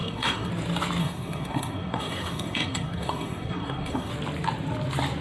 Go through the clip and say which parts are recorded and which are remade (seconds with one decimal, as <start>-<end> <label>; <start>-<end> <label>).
0.0-0.5 remade; 0.5-1.0 recorded; 1.0-4.1 remade; 4.1-5.2 recorded